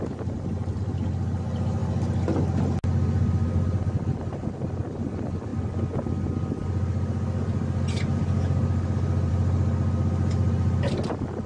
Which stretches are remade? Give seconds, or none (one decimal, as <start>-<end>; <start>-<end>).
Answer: none